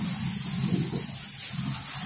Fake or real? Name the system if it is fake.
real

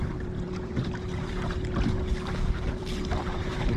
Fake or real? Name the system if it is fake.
fake, vocoder, BigVGAN v2